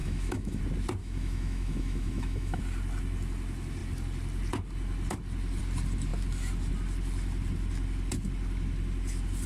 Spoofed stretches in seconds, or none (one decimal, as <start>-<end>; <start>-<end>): 0.0-0.6; 1.0-2.6